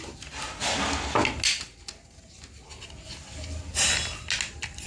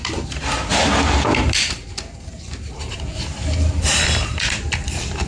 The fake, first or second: second